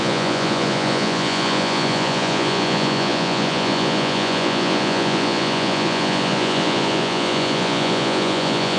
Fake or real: fake